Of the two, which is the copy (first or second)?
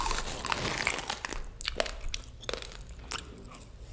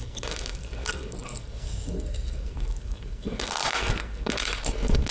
second